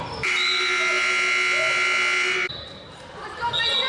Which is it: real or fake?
real